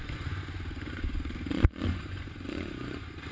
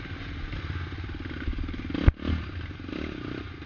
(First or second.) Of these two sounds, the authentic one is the second